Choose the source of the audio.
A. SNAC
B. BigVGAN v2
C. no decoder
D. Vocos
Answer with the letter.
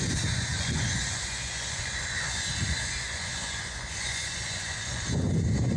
D